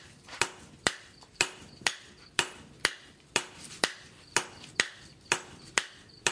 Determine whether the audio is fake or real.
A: fake